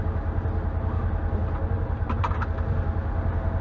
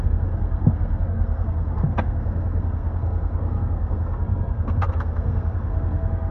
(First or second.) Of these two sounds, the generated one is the second